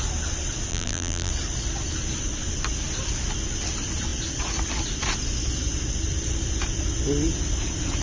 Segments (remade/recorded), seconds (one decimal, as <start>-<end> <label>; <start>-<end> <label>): 0.0-0.7 recorded; 0.7-1.3 remade; 1.3-8.0 recorded